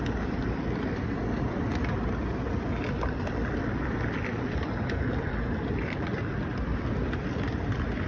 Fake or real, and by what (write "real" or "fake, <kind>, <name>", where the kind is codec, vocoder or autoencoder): fake, vocoder, BigVGAN v2